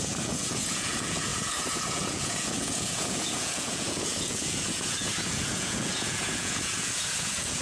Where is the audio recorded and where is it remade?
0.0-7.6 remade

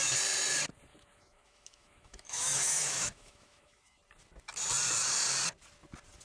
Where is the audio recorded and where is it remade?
0.0-0.9 recorded; 0.9-4.0 remade; 4.0-6.2 recorded